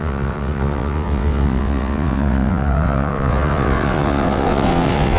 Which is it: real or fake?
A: fake